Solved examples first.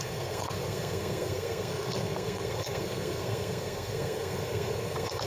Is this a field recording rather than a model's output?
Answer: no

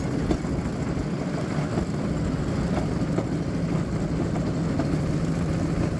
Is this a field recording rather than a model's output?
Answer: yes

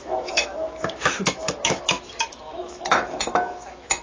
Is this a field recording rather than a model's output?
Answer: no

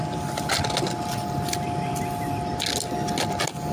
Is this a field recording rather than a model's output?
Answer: yes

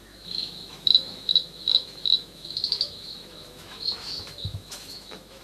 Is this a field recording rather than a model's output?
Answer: no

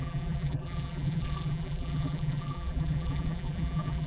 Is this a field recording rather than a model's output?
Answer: no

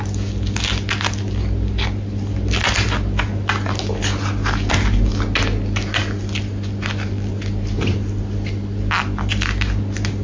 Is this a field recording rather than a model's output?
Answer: yes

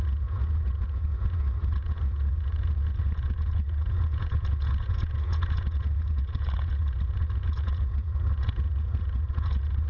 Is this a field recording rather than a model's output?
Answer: no